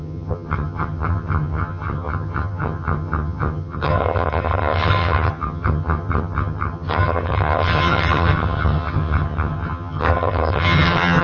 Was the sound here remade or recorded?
remade